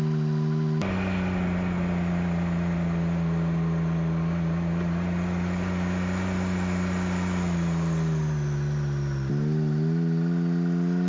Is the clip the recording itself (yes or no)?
yes